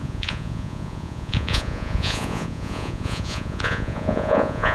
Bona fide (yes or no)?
no